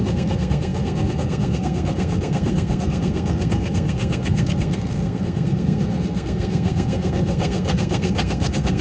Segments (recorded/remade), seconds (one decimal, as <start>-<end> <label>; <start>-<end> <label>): 0.0-8.8 remade